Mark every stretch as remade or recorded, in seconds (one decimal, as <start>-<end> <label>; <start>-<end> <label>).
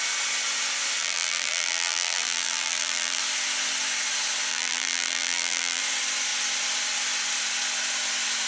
0.0-1.0 recorded; 1.0-3.2 remade; 3.2-4.5 recorded; 4.5-5.8 remade; 5.8-8.5 recorded